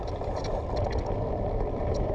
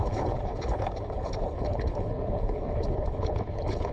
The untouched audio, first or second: first